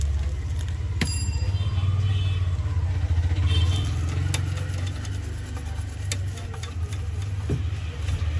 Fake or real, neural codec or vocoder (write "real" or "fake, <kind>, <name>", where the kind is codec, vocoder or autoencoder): real